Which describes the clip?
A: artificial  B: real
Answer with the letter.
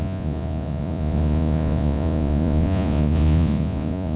A